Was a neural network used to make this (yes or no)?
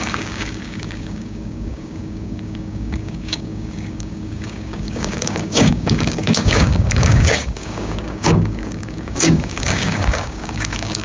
yes